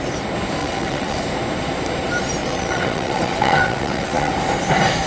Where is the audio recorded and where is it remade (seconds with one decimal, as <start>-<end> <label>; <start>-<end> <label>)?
0.0-0.6 recorded; 0.6-1.2 remade; 1.2-2.4 recorded; 2.4-4.3 remade; 4.3-5.1 recorded